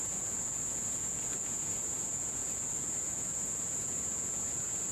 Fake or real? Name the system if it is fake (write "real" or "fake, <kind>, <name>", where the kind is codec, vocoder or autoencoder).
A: fake, vocoder, Vocos